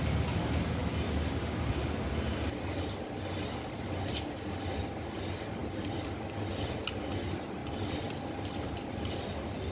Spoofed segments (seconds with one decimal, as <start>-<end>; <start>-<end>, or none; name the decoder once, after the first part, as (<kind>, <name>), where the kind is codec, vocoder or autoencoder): none